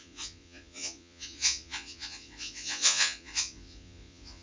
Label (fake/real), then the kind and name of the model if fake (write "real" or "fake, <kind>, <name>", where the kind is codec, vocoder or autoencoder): fake, vocoder, Vocos